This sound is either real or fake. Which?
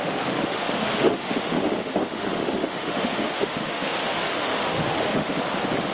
fake